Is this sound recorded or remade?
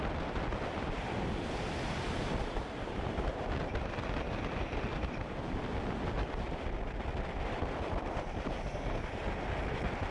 recorded